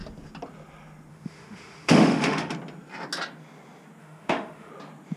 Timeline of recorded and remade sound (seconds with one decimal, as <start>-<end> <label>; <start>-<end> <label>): 0.0-1.1 recorded; 1.1-2.5 remade; 2.5-4.0 recorded; 4.0-4.7 remade; 4.7-5.2 recorded